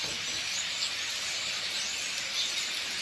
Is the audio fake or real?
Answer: real